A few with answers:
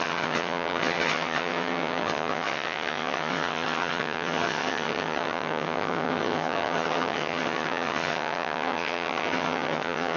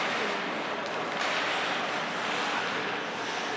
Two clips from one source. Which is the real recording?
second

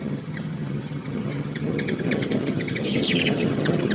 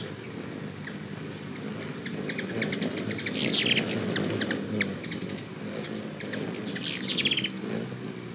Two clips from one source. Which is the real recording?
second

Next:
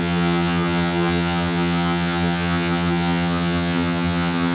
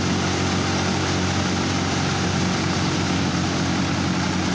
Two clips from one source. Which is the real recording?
second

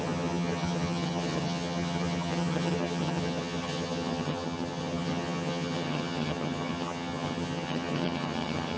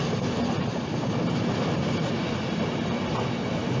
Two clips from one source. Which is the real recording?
second